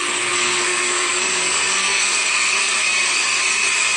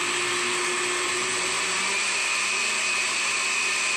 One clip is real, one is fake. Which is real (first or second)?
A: second